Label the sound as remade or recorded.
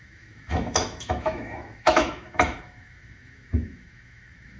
remade